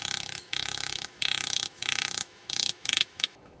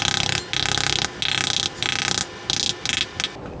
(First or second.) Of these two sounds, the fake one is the first